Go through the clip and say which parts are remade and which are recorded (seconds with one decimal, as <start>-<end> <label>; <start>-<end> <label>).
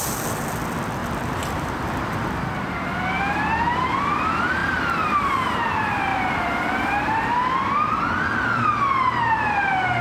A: 0.0-10.0 recorded